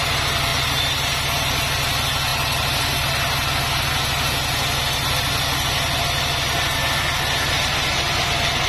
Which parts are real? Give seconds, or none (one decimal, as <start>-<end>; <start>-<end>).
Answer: 0.0-0.5; 1.4-2.3; 3.1-8.7